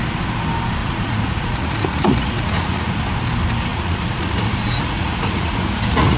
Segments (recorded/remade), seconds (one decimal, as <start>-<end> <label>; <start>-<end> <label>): 0.0-0.8 recorded; 0.8-3.0 remade; 3.0-3.7 recorded; 3.7-6.2 remade